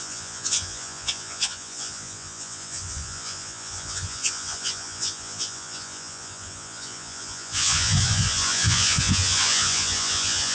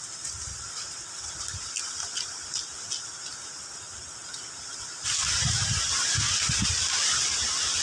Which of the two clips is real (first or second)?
second